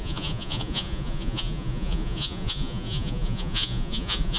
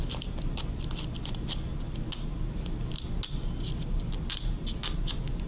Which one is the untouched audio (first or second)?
second